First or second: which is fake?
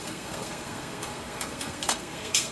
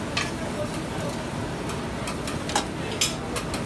first